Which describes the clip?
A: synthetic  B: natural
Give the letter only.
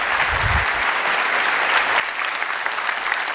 B